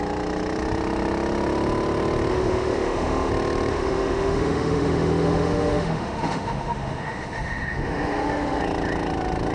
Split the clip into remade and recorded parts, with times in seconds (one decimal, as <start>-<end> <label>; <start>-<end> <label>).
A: 0.0-2.3 recorded; 2.3-3.3 remade; 3.3-3.7 recorded; 3.7-8.6 remade; 8.6-9.5 recorded